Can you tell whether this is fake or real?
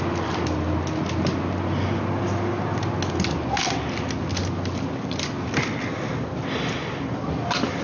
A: real